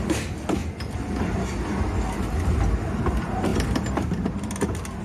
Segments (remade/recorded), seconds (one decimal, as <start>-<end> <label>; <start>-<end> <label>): 0.0-5.0 recorded